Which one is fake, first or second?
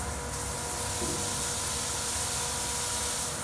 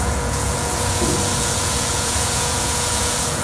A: second